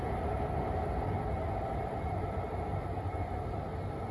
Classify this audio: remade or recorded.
recorded